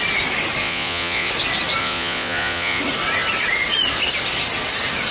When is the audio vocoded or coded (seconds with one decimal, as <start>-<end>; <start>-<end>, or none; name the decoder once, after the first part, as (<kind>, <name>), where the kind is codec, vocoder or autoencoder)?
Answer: 0.6-1.3 (vocoder, Vocos); 1.8-2.8